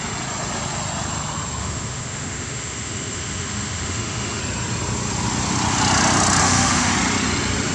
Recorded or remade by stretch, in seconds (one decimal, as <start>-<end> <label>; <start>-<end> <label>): 0.0-1.6 recorded; 1.6-4.4 remade; 4.4-6.4 recorded; 6.4-6.9 remade; 6.9-7.7 recorded